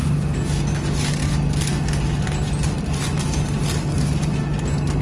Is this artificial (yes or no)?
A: no